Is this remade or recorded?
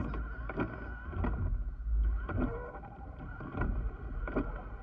recorded